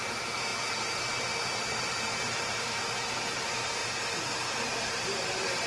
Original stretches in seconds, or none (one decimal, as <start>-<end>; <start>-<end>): none